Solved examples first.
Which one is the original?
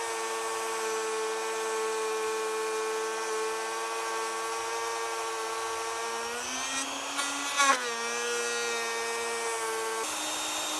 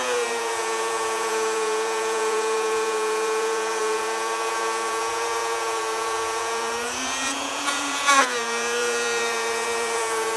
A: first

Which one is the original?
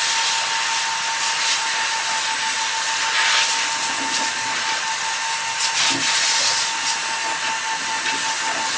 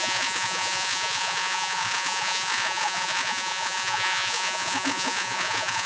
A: first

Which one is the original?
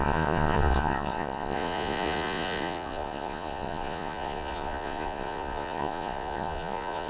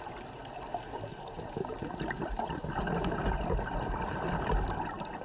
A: second